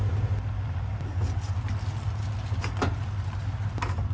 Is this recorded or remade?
recorded